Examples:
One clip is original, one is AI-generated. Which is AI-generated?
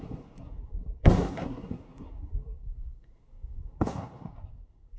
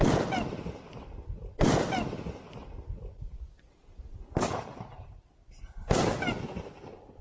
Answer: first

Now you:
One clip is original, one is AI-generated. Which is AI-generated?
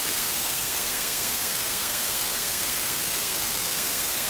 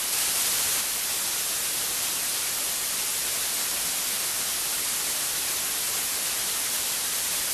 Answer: first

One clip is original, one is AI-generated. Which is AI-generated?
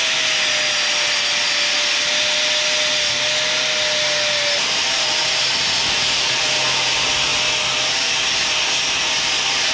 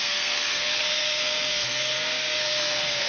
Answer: second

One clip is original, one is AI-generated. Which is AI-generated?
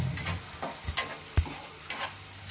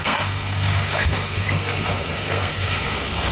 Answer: second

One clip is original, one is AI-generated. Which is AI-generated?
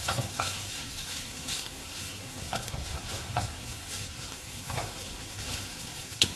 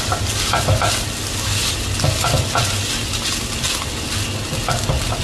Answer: first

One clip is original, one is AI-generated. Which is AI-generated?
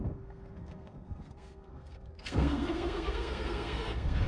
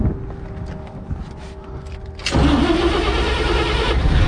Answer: first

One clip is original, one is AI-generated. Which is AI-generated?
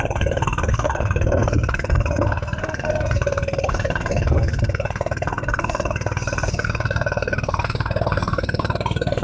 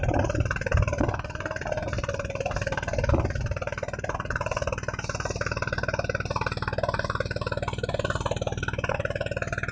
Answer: first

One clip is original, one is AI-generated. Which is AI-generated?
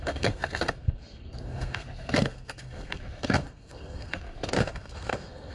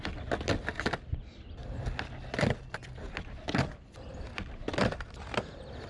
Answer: first